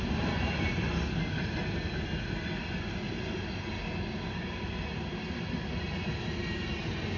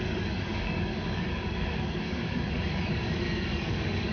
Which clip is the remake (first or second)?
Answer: second